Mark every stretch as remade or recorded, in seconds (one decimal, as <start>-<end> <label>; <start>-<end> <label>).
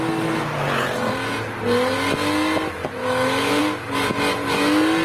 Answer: 0.0-3.0 recorded; 3.0-3.6 remade; 3.6-5.0 recorded